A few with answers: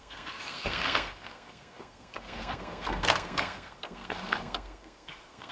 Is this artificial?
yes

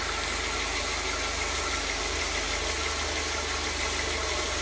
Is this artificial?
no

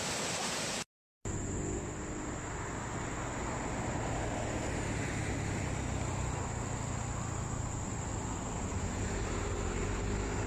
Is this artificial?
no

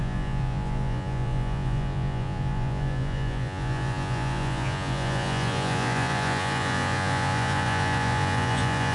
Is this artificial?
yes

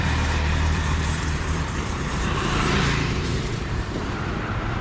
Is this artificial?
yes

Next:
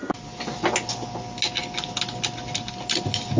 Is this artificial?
no